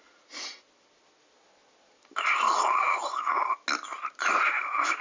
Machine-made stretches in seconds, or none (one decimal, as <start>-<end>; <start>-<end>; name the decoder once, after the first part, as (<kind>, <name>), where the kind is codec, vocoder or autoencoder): none